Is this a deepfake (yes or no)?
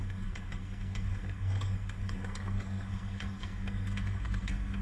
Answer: yes